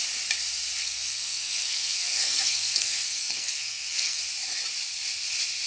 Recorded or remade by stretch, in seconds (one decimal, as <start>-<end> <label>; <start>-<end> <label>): 0.0-0.8 recorded; 0.8-4.2 remade; 4.2-5.7 recorded